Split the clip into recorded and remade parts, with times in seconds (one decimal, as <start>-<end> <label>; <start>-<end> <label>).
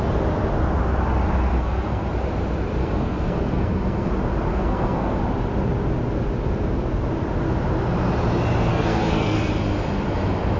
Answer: 0.0-1.5 recorded; 1.5-2.1 remade; 2.1-2.8 recorded; 2.8-4.1 remade; 4.1-4.5 recorded; 4.5-5.2 remade; 5.2-8.7 recorded; 8.7-9.5 remade; 9.5-10.6 recorded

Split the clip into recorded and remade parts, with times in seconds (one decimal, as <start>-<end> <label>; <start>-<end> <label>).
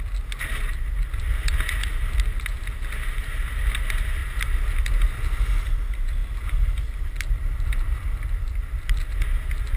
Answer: 0.0-9.8 recorded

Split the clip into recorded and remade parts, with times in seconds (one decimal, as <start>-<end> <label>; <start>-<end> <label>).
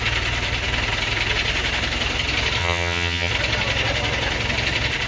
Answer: 0.0-2.6 recorded; 2.6-3.3 remade; 3.3-5.1 recorded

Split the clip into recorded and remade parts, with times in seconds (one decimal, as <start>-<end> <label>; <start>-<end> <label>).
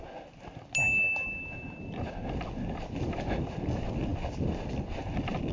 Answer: 0.0-5.5 recorded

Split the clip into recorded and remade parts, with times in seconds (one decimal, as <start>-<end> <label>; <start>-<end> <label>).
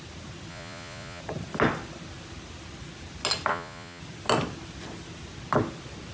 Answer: 0.0-0.5 recorded; 0.5-1.2 remade; 1.2-3.5 recorded; 3.5-4.0 remade; 4.0-6.1 recorded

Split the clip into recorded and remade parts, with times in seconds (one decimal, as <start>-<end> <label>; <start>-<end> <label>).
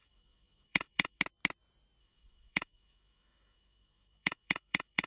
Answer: 0.0-1.2 remade; 1.2-2.0 recorded; 2.0-5.1 remade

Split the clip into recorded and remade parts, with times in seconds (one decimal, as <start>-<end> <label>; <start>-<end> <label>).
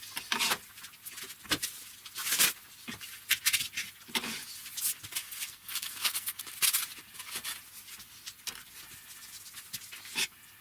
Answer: 0.0-5.2 recorded; 5.2-6.4 remade; 6.4-10.6 recorded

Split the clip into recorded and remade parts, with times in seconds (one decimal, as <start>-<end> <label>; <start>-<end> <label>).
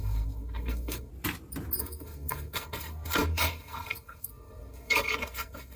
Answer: 0.0-1.1 remade; 1.1-1.8 recorded; 1.8-5.8 remade